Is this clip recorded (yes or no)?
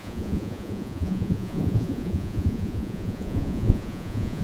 no